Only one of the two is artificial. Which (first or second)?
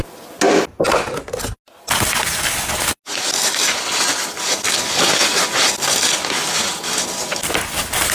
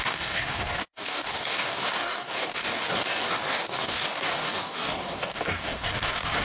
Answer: second